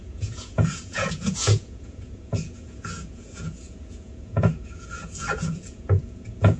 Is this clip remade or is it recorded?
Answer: remade